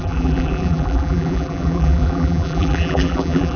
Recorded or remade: remade